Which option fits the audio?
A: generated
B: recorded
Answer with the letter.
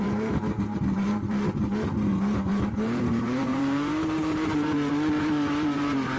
A